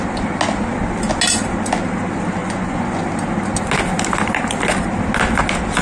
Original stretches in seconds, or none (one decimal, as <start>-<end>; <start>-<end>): 0.0-2.4; 3.0-5.8